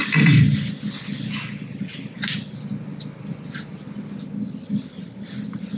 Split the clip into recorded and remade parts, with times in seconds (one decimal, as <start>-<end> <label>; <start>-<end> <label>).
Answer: 0.0-5.8 recorded